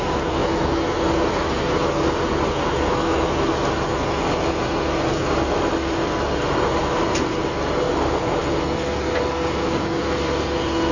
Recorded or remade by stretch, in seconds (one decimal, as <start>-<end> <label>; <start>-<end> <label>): 0.0-6.8 recorded; 6.8-7.4 remade; 7.4-10.9 recorded